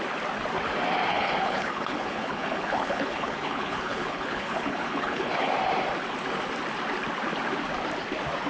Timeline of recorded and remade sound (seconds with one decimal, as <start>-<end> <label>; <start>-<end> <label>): 0.0-1.1 recorded; 1.1-5.5 remade; 5.5-8.5 recorded